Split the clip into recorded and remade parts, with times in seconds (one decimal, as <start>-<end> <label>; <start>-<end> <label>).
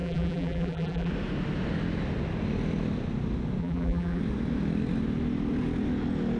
0.0-1.1 remade; 1.1-3.6 recorded; 3.6-4.2 remade; 4.2-6.4 recorded